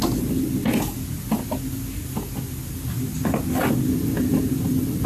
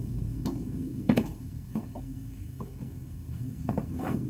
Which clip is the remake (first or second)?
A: second